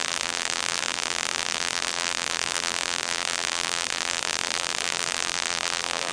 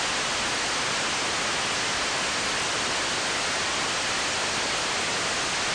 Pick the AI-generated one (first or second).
first